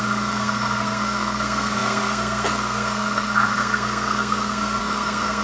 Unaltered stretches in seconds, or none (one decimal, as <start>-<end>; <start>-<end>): none